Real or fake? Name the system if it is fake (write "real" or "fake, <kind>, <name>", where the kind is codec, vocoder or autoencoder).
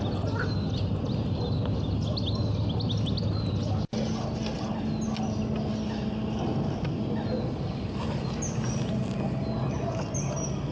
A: real